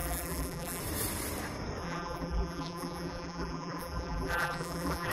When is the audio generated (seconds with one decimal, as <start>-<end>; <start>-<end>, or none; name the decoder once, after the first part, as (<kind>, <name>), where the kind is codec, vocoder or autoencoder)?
0.0-0.8 (vocoder, BigVGAN v2); 1.8-5.1